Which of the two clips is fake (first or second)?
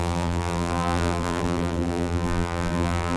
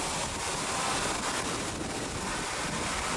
first